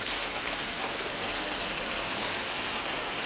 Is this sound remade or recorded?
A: remade